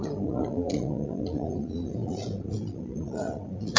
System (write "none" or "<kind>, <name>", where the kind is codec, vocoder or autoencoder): vocoder, Vocos